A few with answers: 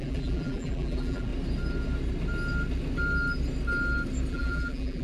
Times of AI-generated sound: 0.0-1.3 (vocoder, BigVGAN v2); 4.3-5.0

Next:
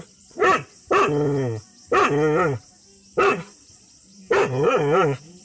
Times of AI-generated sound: 0.0-0.4 (vocoder, Vocos); 3.6-4.1